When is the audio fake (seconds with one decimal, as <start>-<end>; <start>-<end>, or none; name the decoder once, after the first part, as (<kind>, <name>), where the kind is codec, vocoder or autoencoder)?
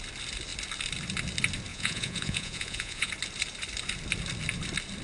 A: 1.7-3.1 (vocoder, Vocos)